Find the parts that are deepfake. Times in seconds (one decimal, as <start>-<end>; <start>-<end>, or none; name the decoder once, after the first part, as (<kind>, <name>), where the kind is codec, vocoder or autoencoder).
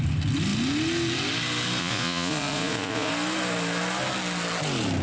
1.8-3.1 (vocoder, Vocos)